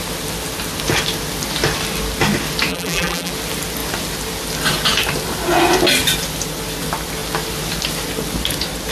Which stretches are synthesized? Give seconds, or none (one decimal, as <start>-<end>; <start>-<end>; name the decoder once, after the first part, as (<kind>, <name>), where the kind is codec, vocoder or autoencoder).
2.7-3.3 (vocoder, BigVGAN v2)